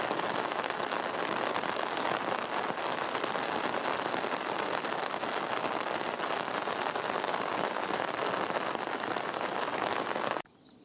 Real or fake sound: real